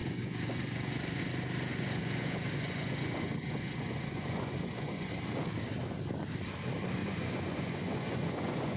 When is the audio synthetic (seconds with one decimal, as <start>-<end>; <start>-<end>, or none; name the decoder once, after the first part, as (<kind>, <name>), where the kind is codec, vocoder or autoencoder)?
0.0-1.2 (vocoder, Vocos); 1.7-5.1; 7.0-8.8